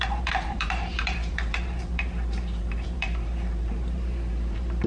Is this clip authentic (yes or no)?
no